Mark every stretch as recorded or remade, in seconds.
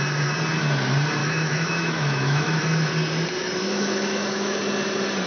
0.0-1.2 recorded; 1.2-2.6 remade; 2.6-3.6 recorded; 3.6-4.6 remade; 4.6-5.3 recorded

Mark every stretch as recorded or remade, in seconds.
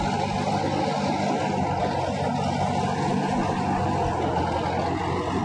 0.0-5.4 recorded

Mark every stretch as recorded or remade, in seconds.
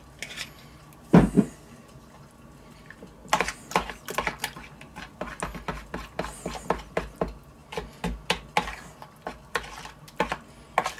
0.0-11.0 recorded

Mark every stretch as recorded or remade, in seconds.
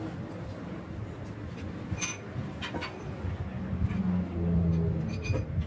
0.0-5.7 recorded